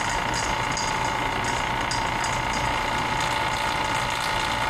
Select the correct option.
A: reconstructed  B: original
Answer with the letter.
B